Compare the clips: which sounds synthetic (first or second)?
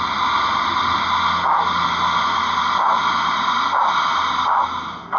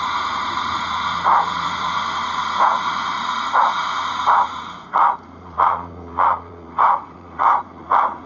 second